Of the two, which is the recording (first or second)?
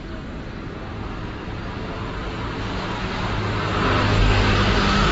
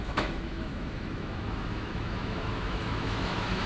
first